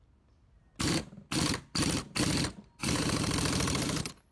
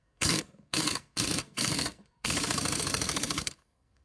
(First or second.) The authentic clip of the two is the first